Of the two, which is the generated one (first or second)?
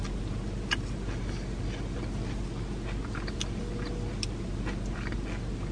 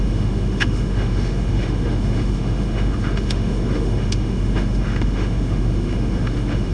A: second